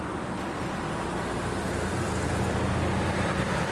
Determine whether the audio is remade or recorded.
recorded